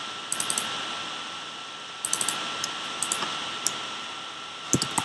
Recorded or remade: recorded